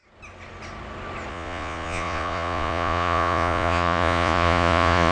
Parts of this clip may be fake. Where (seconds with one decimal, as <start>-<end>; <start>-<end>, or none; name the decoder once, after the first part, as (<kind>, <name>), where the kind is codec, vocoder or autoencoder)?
1.3-5.1 (vocoder, Vocos)